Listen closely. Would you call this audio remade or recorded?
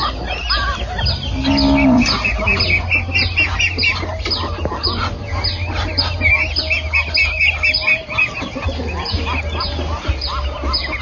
recorded